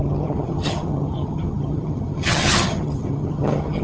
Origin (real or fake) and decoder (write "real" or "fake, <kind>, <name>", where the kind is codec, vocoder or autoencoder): fake, vocoder, HiFi-GAN